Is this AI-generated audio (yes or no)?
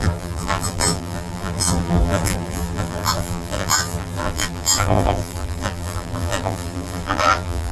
yes